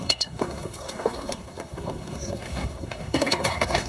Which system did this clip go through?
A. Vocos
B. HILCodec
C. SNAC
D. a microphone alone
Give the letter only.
C